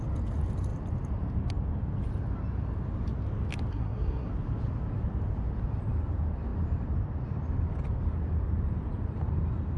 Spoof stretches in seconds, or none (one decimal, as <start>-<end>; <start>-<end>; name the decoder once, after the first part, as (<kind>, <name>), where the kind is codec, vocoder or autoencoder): 3.7-4.3 (codec, SNAC)